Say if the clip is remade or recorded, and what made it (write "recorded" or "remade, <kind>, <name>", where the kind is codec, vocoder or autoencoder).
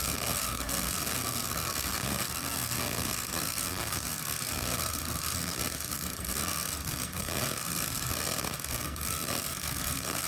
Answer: remade, codec, SNAC